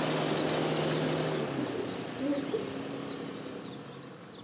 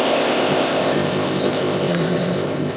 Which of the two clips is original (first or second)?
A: first